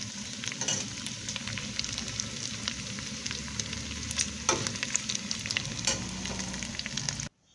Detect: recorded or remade recorded